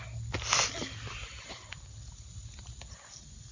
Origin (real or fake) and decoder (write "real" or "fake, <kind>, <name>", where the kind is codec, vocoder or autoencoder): real